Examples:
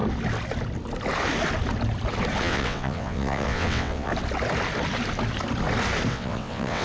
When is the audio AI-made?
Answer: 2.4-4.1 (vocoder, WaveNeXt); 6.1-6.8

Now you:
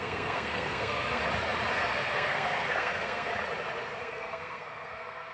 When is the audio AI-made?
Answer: 0.0-1.2 (codec, SNAC); 1.7-3.3; 4.0-5.3

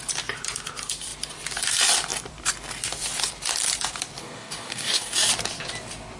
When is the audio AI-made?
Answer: 4.2-5.3 (codec, DAC)